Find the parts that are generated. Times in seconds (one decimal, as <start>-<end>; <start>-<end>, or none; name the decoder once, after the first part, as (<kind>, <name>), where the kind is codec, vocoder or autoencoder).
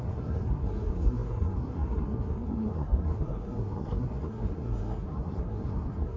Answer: 0.0-6.2 (codec, SNAC)